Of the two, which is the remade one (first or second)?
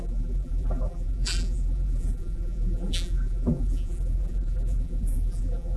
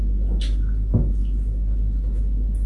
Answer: first